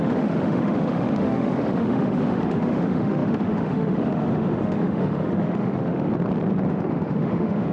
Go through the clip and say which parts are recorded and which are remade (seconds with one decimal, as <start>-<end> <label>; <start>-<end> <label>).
0.0-6.1 remade; 6.1-6.7 recorded; 6.7-7.7 remade